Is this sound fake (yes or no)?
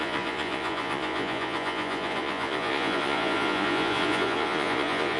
yes